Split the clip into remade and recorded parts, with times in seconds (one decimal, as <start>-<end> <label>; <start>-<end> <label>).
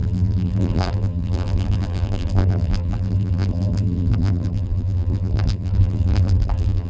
0.0-6.9 remade